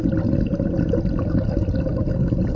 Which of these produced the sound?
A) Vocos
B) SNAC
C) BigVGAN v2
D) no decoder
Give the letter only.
D